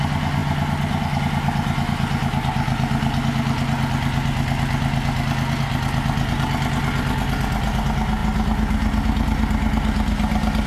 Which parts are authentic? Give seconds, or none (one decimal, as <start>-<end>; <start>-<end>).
0.0-10.7